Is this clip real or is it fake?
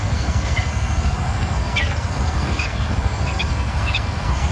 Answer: fake